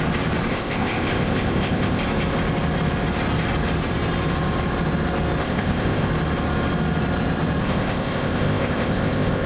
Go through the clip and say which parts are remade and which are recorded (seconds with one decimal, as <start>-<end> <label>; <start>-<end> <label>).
0.0-0.5 recorded; 0.5-2.0 remade; 2.0-5.4 recorded; 5.4-6.1 remade; 6.1-7.6 recorded; 7.6-9.5 remade